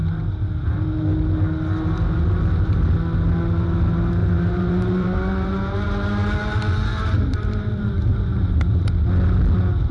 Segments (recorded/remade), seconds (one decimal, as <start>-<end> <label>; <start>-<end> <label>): 0.0-4.2 recorded; 4.2-5.5 remade; 5.5-6.9 recorded; 6.9-8.8 remade; 8.8-9.9 recorded